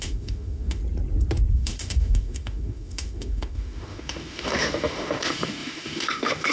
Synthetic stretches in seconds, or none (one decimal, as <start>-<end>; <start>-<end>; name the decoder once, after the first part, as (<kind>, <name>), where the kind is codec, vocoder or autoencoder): 0.0-0.8 (autoencoder, DAC-VAE); 1.5-6.5